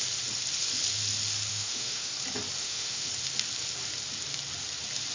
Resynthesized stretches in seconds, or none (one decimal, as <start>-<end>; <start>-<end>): 1.5-2.1; 2.6-3.1